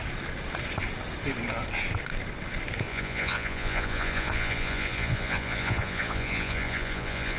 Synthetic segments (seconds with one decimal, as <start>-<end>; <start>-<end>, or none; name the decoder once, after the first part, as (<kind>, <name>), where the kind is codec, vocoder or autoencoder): 2.9-7.4 (vocoder, Vocos)